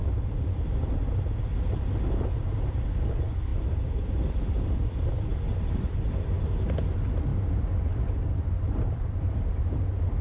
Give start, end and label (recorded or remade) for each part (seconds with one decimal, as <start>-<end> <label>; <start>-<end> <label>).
0.0-3.5 recorded; 3.5-5.7 remade; 5.7-7.3 recorded; 7.3-10.2 remade